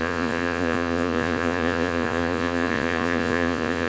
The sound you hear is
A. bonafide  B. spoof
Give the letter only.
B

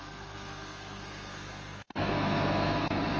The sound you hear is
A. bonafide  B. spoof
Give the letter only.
B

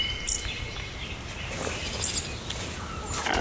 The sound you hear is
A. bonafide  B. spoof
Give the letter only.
A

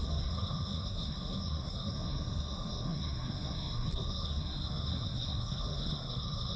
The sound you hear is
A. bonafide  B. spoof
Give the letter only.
B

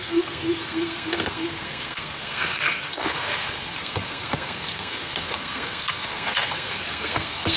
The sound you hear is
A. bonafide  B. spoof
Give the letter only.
B